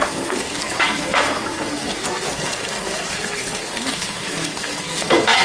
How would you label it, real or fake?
fake